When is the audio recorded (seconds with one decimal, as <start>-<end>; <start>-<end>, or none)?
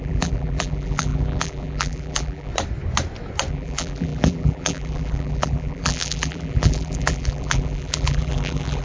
2.5-3.5